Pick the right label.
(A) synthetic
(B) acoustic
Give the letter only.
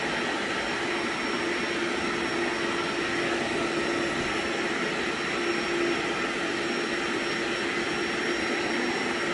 B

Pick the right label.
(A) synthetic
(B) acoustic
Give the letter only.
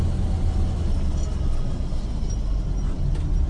B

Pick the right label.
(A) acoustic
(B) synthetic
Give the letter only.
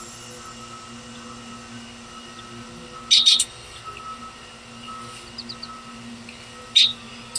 A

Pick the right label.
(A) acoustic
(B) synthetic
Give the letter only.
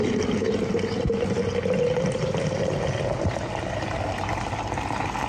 A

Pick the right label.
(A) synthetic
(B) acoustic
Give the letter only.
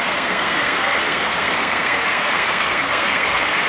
A